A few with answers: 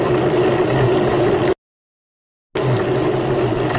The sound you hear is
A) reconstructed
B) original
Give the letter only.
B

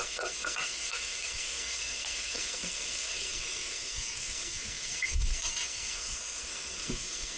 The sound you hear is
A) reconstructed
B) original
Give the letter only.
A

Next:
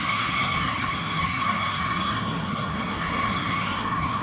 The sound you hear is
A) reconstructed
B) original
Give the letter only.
A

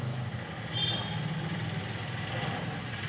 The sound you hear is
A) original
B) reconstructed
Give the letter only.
A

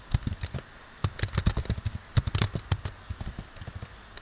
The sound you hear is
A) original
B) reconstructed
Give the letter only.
A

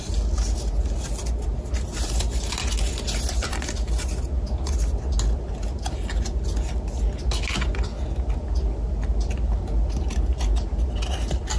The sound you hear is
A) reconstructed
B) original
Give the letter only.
B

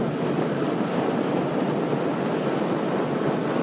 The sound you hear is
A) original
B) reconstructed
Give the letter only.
A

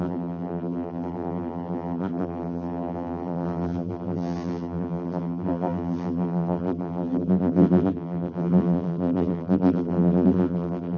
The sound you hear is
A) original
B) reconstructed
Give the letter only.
B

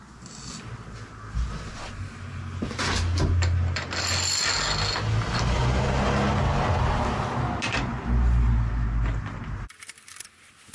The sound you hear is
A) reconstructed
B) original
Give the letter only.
B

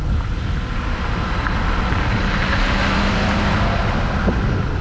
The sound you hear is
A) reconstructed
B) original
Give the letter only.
B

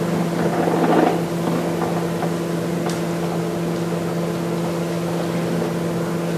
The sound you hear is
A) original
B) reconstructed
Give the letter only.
A